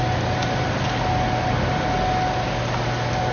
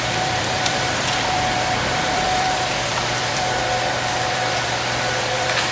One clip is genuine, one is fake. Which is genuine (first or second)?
first